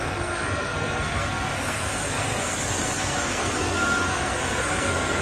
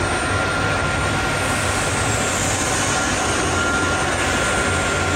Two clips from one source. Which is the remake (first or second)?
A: first